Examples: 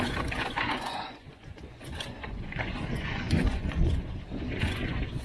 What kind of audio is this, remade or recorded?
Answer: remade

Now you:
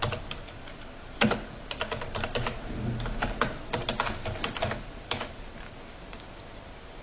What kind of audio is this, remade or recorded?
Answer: recorded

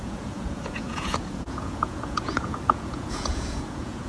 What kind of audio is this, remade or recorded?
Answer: remade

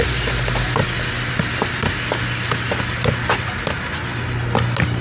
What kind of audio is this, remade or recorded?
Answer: recorded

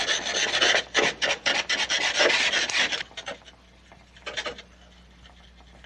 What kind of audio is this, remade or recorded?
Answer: recorded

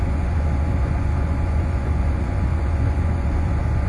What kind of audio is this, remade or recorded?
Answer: remade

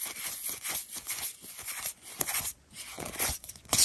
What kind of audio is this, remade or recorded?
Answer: remade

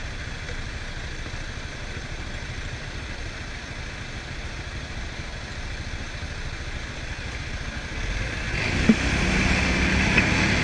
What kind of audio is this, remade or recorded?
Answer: recorded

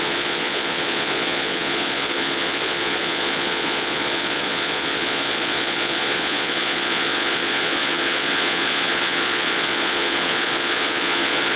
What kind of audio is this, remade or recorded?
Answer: remade